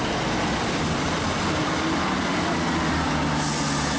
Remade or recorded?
recorded